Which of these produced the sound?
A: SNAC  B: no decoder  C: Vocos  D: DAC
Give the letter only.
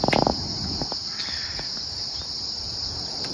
B